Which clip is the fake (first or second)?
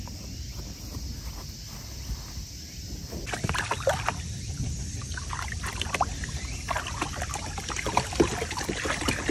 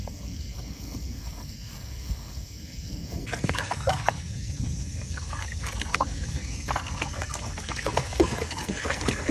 second